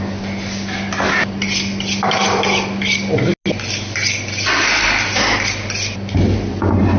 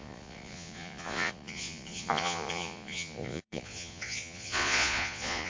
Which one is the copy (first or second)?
second